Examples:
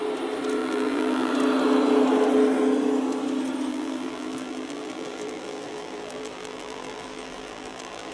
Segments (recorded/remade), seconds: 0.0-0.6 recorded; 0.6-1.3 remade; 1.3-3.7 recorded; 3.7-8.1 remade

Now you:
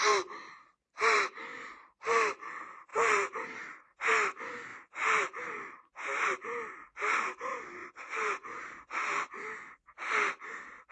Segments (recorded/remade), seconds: 0.0-2.9 recorded; 2.9-4.1 remade; 4.1-4.7 recorded; 4.7-5.4 remade; 5.4-7.8 recorded; 7.8-8.8 remade; 8.8-10.9 recorded

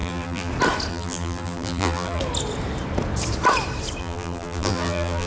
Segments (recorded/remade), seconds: 0.0-0.5 remade; 0.5-0.9 recorded; 0.9-2.2 remade; 2.2-4.0 recorded; 4.0-5.3 remade

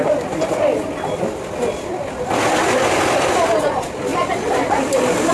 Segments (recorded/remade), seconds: 0.0-4.1 recorded; 4.1-5.3 remade

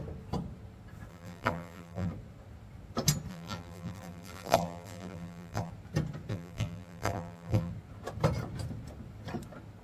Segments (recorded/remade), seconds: 0.0-1.1 recorded; 1.1-2.1 remade; 2.1-3.3 recorded; 3.3-5.7 remade; 5.7-6.3 recorded; 6.3-7.7 remade; 7.7-9.8 recorded

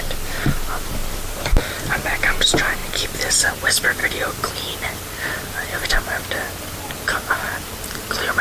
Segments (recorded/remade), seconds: 0.0-1.0 recorded; 1.0-2.1 remade; 2.1-2.8 recorded; 2.8-3.5 remade; 3.5-4.0 recorded; 4.0-4.5 remade; 4.5-8.4 recorded

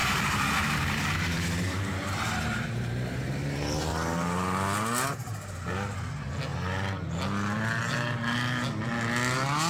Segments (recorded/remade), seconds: 0.0-3.9 remade; 3.9-9.7 recorded